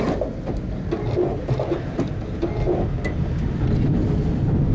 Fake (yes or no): no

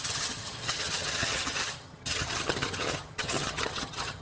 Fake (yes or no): yes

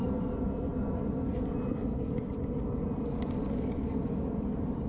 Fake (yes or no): no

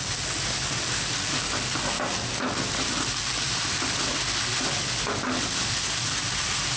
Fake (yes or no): no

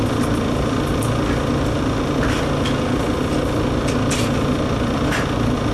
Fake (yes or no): no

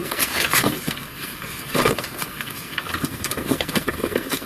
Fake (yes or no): yes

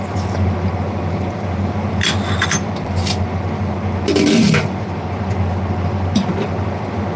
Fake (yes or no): no